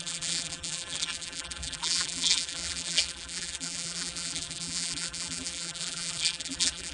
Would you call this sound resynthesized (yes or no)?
yes